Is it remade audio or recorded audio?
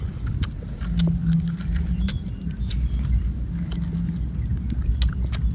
recorded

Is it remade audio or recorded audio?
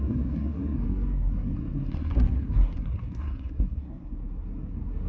remade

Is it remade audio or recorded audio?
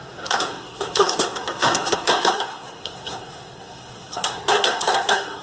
remade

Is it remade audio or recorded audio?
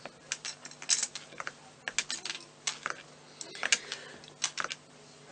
recorded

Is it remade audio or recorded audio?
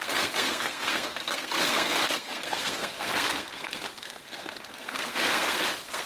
remade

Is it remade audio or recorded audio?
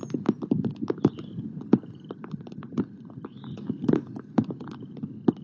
recorded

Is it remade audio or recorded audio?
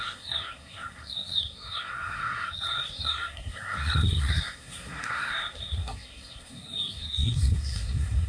remade